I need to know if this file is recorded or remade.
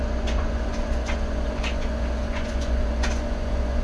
remade